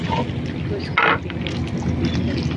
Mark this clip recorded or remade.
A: recorded